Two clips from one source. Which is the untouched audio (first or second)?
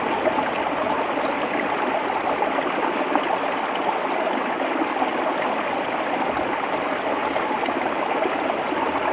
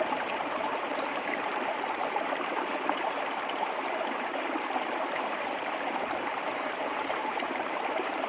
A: first